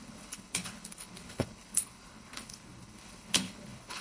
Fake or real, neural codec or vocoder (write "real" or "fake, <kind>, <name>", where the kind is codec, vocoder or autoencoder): fake, codec, HILCodec